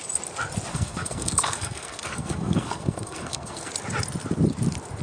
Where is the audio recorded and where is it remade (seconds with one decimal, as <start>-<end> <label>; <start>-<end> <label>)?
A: 0.0-0.7 recorded; 0.7-3.7 remade; 3.7-5.0 recorded